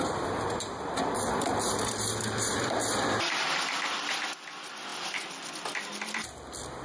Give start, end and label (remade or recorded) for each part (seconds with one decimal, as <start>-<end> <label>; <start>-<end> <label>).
0.0-6.8 remade